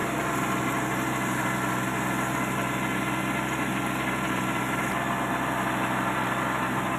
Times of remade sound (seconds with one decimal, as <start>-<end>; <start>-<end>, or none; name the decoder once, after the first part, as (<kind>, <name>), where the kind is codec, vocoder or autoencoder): none